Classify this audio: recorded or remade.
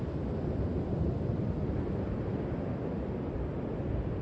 recorded